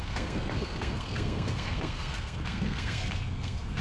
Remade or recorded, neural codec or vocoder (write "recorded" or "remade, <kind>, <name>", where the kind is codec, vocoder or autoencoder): remade, codec, SNAC